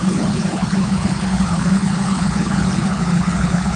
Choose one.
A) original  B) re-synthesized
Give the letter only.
B